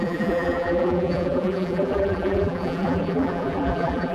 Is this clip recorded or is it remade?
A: remade